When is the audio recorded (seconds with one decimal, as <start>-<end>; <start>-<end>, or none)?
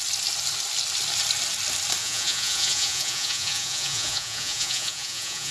0.0-2.0